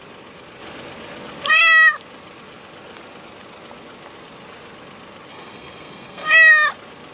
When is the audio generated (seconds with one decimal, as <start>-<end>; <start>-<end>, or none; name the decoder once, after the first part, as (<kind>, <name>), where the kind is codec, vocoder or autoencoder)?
5.3-6.3 (codec, SNAC)

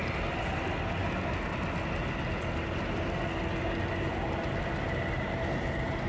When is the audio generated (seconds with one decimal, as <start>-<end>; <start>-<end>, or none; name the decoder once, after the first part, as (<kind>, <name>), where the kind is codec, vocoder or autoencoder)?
none